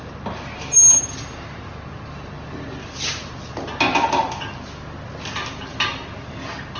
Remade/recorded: recorded